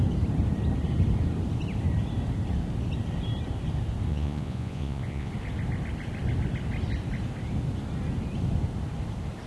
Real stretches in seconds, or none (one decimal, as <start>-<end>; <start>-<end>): 0.0-4.1; 5.3-9.5